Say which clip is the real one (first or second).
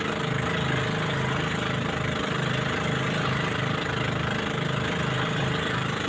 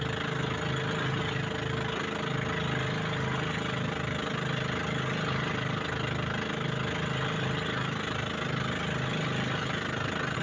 second